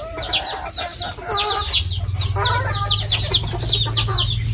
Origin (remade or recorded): recorded